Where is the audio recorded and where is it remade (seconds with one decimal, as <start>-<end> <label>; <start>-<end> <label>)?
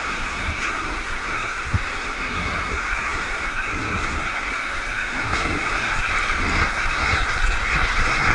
0.0-6.1 remade; 6.1-6.6 recorded; 6.6-8.3 remade